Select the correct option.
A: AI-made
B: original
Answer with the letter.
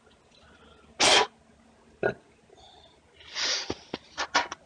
B